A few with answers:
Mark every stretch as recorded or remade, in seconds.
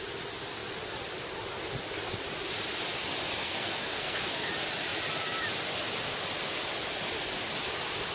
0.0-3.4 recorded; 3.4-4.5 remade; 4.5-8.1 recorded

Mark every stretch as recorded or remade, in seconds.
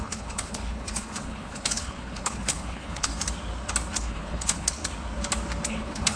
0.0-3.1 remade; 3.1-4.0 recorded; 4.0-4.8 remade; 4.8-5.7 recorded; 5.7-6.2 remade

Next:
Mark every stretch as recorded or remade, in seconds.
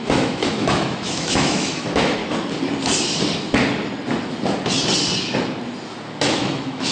0.0-2.2 remade; 2.2-6.2 recorded; 6.2-6.9 remade